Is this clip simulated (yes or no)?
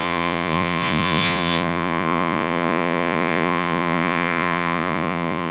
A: yes